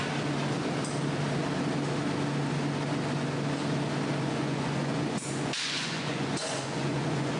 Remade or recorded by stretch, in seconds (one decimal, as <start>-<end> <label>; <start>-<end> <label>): 0.0-4.2 recorded; 4.2-7.4 remade